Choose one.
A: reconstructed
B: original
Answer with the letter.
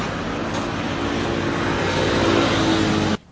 B